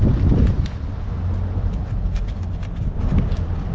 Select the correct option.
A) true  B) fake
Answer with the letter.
A